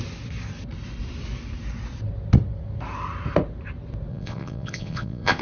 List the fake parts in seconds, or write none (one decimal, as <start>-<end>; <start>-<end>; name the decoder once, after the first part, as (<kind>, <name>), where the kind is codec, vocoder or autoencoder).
4.1-5.4 (vocoder, Vocos)